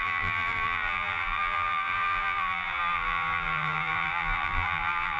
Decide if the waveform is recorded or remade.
remade